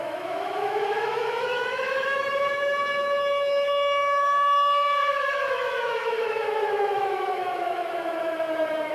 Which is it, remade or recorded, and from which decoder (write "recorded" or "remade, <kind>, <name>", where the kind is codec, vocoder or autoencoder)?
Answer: remade, autoencoder, DAC-VAE